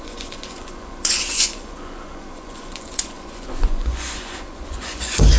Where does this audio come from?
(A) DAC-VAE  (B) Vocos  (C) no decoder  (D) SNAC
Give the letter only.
B